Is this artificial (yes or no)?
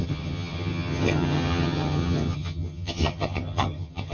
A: yes